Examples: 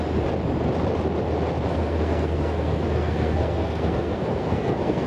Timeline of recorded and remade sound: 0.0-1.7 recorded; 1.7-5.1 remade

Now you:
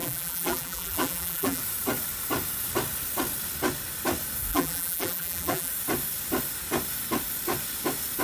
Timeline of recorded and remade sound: 0.0-1.6 remade; 1.6-4.5 recorded; 4.5-5.7 remade; 5.7-8.2 recorded

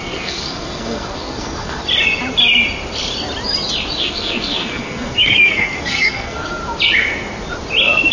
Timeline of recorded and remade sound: 0.0-1.8 remade; 1.8-4.0 recorded; 4.0-6.6 remade; 6.6-8.1 recorded